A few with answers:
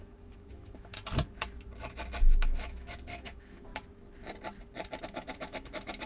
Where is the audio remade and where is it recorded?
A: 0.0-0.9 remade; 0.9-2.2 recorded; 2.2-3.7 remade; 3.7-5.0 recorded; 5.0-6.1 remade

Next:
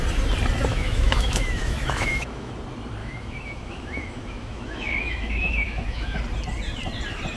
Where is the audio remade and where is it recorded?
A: 0.0-0.7 recorded; 0.7-2.5 remade; 2.5-3.0 recorded; 3.0-6.2 remade; 6.2-7.4 recorded

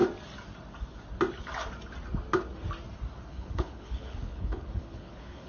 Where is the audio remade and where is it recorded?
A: 0.0-3.3 recorded; 3.3-5.5 remade